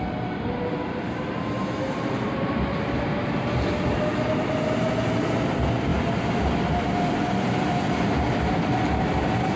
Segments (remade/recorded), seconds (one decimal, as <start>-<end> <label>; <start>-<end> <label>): 0.0-9.6 recorded